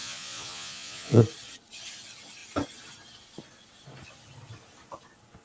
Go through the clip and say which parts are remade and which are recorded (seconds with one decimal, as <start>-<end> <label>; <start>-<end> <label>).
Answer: 0.0-1.2 remade; 1.2-5.4 recorded